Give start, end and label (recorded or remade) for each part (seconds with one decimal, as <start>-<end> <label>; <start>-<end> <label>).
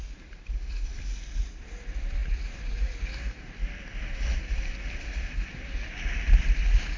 0.0-7.0 recorded